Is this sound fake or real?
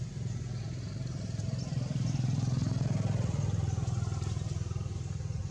real